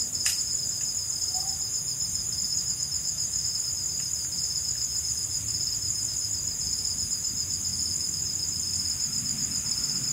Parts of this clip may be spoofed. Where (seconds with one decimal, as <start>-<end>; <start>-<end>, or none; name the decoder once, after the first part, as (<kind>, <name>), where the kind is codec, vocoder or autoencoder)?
2.5-3.5 (autoencoder, DAC-VAE)